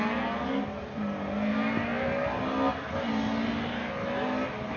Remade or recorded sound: recorded